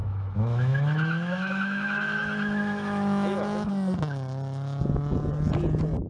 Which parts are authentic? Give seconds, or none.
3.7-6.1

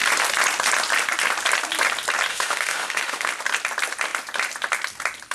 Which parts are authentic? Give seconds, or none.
0.0-2.3; 3.3-5.3